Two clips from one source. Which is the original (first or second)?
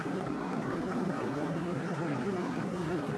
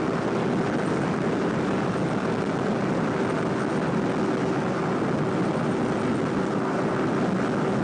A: second